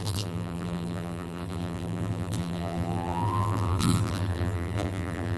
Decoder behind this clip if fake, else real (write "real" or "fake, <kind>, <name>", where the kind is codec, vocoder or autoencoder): fake, vocoder, BigVGAN v2